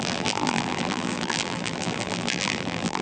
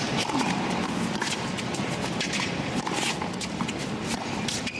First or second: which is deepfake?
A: first